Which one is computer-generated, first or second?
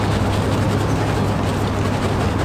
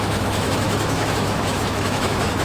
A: second